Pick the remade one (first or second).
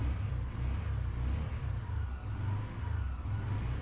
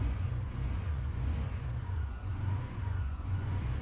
second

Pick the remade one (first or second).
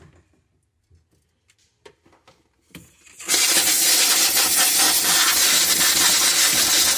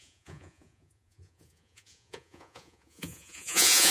second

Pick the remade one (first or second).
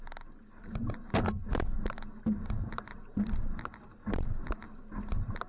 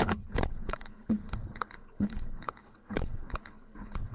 second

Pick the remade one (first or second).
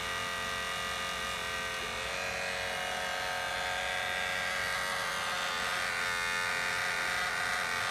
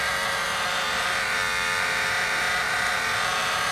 second